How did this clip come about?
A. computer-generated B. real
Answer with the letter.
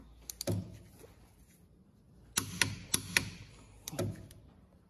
B